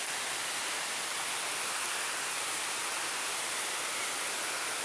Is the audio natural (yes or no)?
yes